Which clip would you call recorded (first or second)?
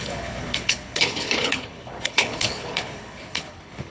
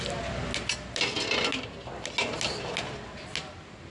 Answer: second